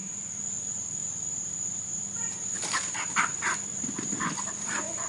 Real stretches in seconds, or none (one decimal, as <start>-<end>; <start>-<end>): 0.6-1.0; 1.7-3.3; 4.5-5.1